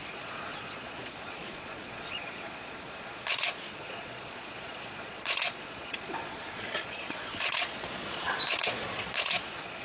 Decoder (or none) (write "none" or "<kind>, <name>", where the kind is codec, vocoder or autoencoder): vocoder, Vocos